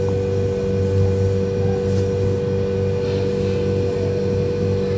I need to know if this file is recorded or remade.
recorded